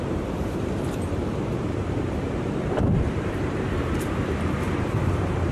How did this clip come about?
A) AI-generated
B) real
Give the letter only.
A